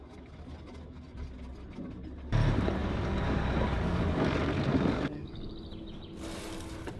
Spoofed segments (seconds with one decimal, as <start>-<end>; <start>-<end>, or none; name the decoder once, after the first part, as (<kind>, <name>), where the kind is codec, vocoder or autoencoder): 2.8-5.5 (codec, DAC)